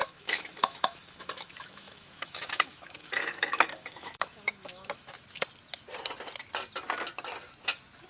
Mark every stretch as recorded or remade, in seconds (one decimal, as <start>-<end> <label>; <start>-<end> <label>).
0.0-4.9 remade; 4.9-8.1 recorded